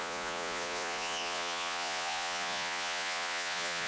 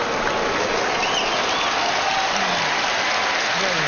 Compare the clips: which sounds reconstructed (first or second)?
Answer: first